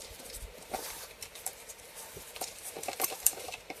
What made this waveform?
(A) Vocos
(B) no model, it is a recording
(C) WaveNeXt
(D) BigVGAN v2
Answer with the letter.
D